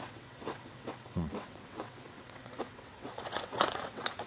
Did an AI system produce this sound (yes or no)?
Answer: yes